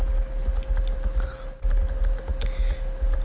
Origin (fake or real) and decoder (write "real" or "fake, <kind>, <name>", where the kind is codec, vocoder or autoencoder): real